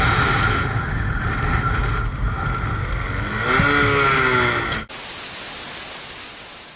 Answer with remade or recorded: recorded